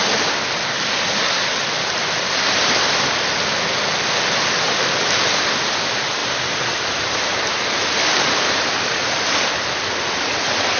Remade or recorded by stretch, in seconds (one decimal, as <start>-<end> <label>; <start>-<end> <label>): 0.0-6.2 recorded; 6.2-9.5 remade; 9.5-10.8 recorded